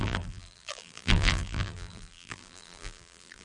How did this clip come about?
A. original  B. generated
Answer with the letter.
B